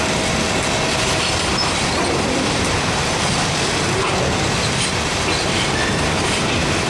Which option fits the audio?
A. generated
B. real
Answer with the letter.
B